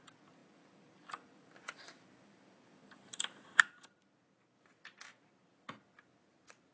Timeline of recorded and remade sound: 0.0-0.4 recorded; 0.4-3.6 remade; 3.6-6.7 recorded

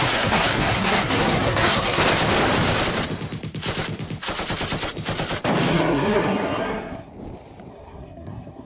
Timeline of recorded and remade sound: 0.0-2.0 remade; 2.0-5.7 recorded; 5.7-7.1 remade; 7.1-7.7 recorded; 7.7-8.7 remade

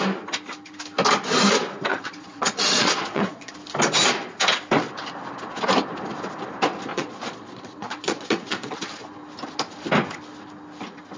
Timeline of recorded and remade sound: 0.0-1.9 recorded; 1.9-3.5 remade; 3.5-6.9 recorded; 6.9-8.7 remade; 8.7-11.2 recorded

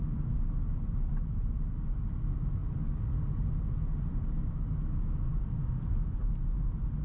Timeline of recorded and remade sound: 0.0-7.0 recorded

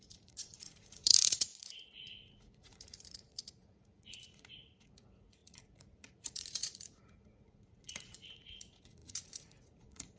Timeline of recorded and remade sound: 0.0-10.2 remade

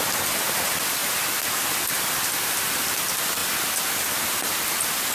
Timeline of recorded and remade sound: 0.0-5.1 recorded

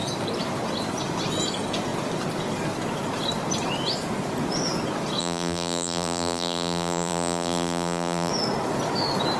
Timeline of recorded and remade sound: 0.0-5.2 recorded; 5.2-8.3 remade; 8.3-9.4 recorded